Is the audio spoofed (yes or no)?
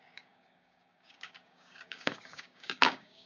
yes